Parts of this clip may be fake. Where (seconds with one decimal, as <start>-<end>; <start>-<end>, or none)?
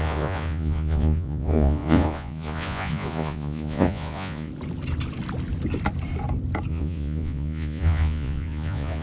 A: 0.0-4.5; 6.7-9.0